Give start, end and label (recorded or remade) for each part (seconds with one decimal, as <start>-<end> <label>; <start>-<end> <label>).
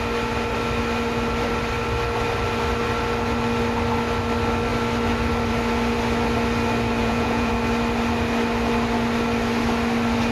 0.0-7.0 recorded; 7.0-7.5 remade; 7.5-10.3 recorded